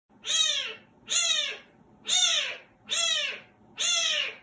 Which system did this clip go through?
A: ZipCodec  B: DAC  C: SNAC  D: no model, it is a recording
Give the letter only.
D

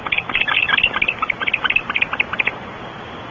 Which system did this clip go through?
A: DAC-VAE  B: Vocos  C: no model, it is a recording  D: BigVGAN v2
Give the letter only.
C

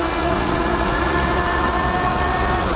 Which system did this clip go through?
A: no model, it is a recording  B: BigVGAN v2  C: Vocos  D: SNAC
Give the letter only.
C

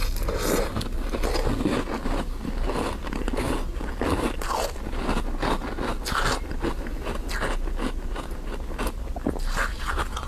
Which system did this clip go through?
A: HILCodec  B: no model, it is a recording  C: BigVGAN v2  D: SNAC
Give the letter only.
B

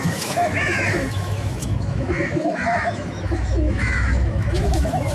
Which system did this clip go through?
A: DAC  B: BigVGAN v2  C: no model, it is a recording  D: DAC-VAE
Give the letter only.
D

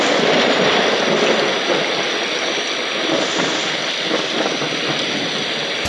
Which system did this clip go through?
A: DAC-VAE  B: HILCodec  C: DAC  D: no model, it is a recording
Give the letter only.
D